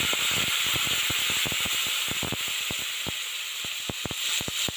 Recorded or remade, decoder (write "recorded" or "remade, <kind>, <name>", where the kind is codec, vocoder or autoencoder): recorded